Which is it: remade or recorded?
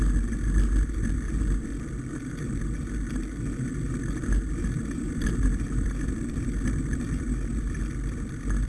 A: recorded